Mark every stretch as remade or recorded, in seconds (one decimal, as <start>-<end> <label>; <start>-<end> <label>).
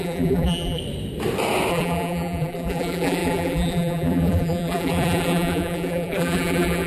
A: 0.0-0.8 remade; 0.8-1.7 recorded; 1.7-6.9 remade